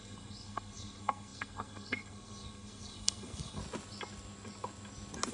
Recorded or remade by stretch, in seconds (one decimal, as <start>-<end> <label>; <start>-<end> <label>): 0.0-3.6 remade; 3.6-5.3 recorded